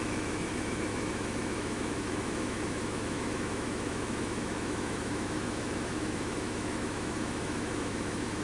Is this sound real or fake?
fake